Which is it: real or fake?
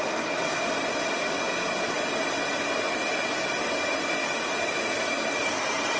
real